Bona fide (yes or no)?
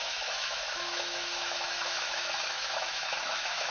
no